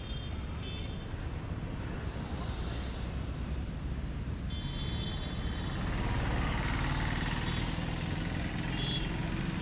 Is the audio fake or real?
real